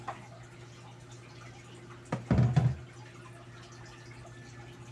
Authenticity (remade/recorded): recorded